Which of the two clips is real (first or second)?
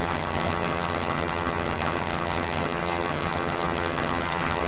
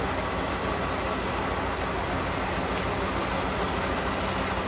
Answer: second